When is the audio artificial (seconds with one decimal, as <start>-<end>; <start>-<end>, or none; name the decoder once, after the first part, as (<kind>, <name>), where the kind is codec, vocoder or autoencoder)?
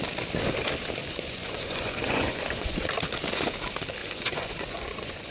1.0-2.9 (vocoder, Vocos); 4.0-5.3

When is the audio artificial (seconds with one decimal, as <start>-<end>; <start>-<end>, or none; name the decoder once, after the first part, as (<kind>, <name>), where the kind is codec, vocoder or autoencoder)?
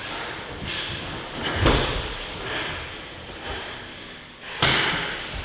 none